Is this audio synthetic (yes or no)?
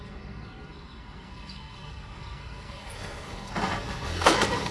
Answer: yes